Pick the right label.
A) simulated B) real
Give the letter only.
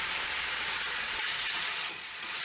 A